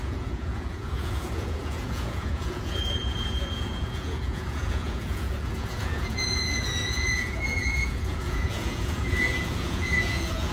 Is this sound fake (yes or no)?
yes